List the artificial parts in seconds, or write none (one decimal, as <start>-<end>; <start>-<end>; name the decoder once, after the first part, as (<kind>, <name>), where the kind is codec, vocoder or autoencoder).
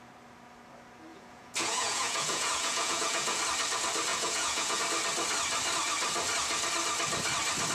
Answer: 1.1-3.4 (vocoder, Vocos); 4.1-4.8